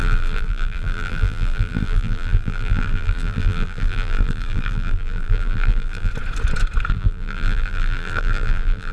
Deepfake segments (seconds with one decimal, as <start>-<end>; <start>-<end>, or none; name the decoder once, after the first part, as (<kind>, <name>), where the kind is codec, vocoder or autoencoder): 0.0-6.1 (vocoder, BigVGAN v2); 6.9-8.9